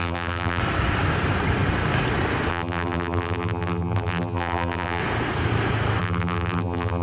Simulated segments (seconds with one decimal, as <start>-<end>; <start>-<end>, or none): 0.0-0.6; 2.5-5.0; 6.0-7.0